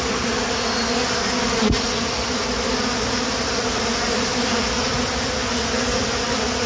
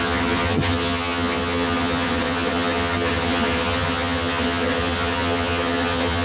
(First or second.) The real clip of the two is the first